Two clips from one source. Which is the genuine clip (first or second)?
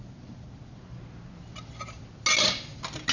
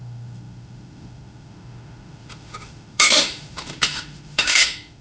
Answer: first